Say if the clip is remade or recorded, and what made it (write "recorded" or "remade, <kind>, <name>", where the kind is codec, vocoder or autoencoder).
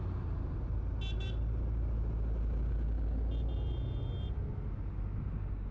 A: recorded